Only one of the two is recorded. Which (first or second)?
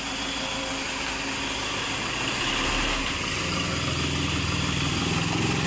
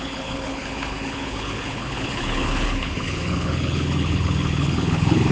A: first